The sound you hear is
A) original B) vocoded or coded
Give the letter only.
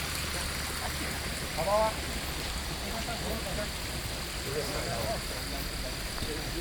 A